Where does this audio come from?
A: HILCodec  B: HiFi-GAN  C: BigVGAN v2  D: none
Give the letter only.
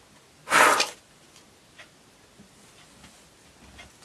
D